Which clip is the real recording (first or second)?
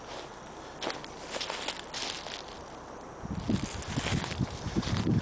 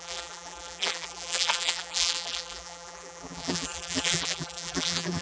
first